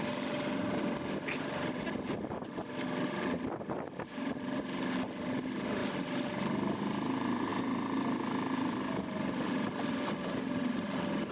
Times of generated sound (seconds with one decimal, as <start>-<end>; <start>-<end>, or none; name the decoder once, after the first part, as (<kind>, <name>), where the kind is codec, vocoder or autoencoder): none